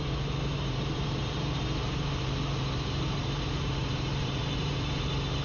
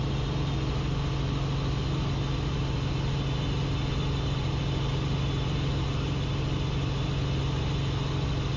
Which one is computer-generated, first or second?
first